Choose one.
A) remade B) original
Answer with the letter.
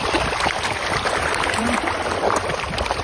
B